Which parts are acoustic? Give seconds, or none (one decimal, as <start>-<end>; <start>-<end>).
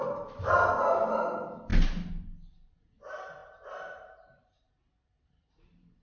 0.0-3.4; 4.7-6.0